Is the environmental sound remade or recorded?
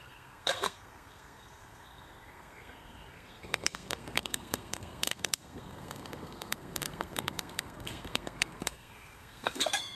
remade